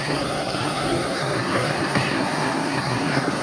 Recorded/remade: remade